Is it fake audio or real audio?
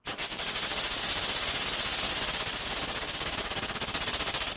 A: real